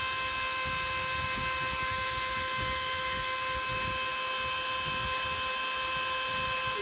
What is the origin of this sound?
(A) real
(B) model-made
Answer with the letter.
A